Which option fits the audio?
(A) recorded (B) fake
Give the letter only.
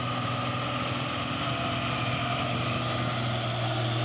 A